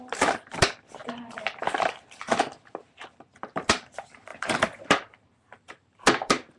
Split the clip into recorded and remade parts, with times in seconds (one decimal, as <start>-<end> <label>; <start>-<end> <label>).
0.0-4.3 remade; 4.3-4.9 recorded; 4.9-6.6 remade